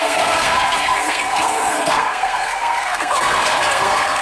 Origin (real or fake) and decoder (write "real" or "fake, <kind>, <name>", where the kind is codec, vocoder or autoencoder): fake, codec, SNAC